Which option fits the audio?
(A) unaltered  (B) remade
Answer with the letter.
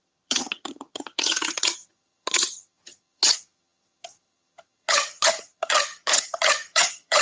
B